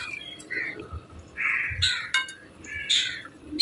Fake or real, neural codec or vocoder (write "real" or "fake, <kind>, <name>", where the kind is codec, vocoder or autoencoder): real